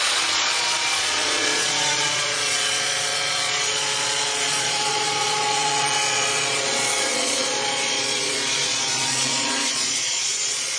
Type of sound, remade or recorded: remade